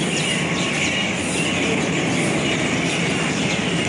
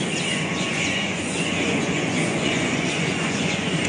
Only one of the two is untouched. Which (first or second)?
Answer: first